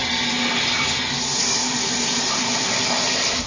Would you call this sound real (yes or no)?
yes